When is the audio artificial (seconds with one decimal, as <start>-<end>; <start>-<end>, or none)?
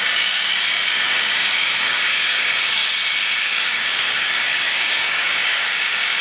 0.0-2.8; 3.4-6.2